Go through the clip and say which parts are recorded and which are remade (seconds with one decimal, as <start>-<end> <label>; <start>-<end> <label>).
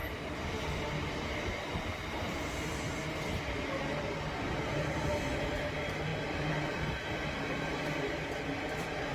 0.0-2.7 remade; 2.7-4.6 recorded; 4.6-9.1 remade